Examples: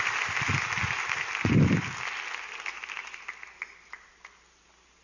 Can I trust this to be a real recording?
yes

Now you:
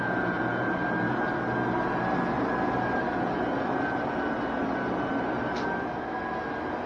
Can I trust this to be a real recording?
yes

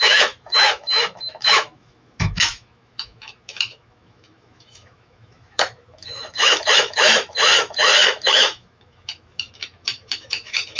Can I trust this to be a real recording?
no